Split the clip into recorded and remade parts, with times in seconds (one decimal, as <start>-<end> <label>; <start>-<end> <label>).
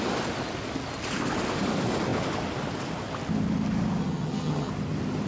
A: 0.0-4.0 recorded; 4.0-4.7 remade; 4.7-5.3 recorded